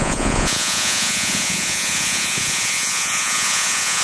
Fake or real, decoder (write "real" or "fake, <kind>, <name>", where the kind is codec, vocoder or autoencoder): fake, vocoder, Vocos